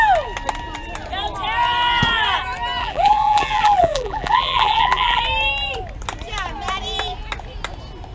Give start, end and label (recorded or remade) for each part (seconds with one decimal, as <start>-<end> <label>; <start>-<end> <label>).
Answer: 0.0-2.8 recorded; 2.8-5.2 remade; 5.2-8.1 recorded